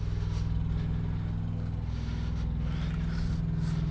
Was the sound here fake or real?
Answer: real